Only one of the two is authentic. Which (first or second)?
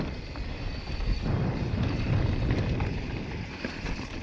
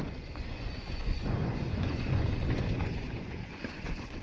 first